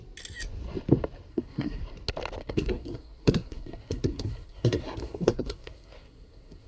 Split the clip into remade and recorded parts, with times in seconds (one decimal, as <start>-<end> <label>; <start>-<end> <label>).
0.0-1.3 recorded; 1.3-1.8 remade; 1.8-2.4 recorded; 2.4-6.7 remade